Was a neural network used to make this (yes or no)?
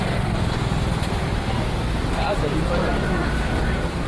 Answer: yes